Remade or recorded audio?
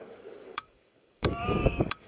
remade